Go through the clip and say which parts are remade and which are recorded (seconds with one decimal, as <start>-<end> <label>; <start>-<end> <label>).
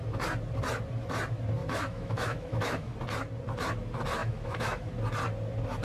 0.0-1.6 recorded; 1.6-2.9 remade; 2.9-4.2 recorded; 4.2-4.9 remade; 4.9-5.8 recorded